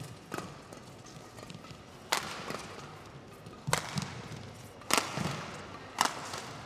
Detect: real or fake real